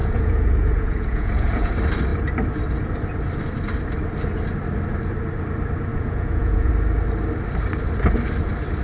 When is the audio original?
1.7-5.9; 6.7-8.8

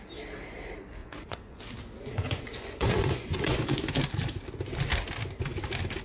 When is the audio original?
0.0-1.0; 1.6-2.1; 3.8-6.0

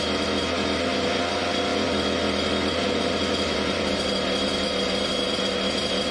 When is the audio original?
0.0-1.7; 5.4-6.1

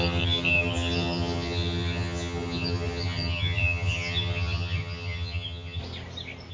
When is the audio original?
5.8-6.5

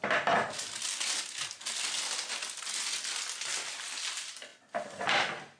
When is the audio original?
0.0-5.6

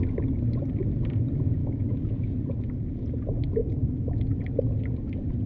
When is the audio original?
0.0-1.6; 2.1-3.6; 4.4-5.5

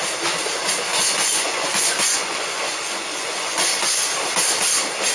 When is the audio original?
0.0-0.9; 4.0-5.1

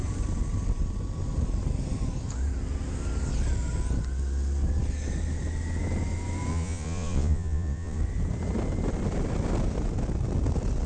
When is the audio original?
0.0-6.5; 8.0-10.9